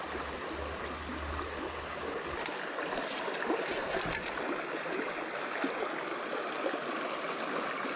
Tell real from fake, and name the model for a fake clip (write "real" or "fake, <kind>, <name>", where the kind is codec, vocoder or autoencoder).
real